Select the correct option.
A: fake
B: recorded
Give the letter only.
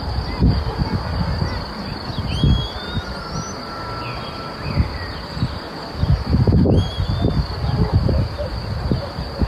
B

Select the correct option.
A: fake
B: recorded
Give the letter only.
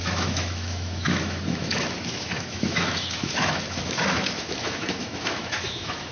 A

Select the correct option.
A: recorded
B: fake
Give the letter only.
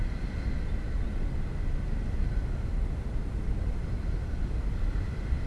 A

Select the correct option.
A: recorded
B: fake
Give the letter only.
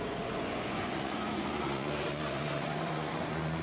B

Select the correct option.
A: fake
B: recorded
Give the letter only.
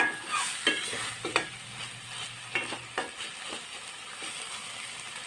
B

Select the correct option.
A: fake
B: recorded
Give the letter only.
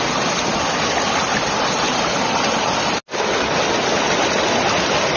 B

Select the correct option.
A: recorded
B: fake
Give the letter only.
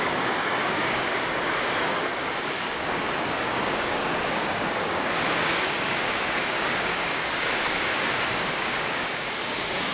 B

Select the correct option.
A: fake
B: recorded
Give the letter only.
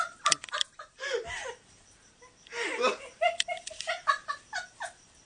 A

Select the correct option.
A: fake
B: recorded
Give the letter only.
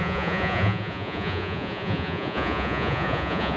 A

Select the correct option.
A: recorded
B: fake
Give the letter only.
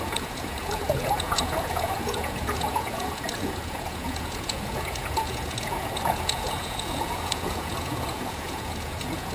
B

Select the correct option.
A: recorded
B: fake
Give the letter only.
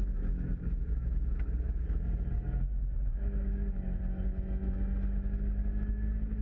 B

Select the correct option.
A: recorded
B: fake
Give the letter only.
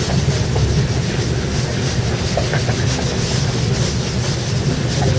A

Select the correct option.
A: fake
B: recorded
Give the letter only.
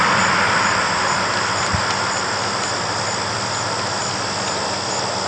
B